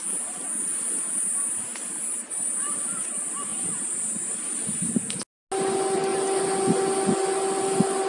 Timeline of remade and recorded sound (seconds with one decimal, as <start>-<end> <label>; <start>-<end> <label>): 0.0-8.1 recorded